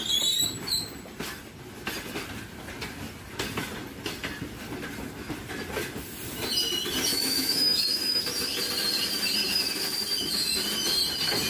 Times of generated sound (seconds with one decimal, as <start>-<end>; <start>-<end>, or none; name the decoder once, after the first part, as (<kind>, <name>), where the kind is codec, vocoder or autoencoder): 7.1-8.2 (autoencoder, DAC-VAE)